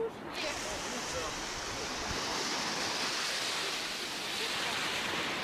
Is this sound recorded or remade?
recorded